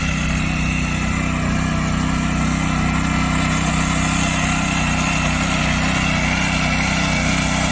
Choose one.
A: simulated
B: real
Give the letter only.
B